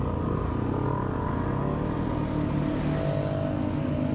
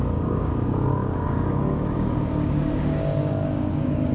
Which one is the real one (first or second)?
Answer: first